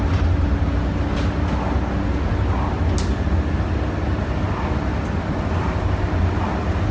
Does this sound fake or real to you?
real